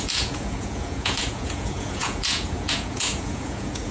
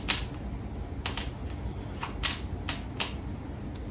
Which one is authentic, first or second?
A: second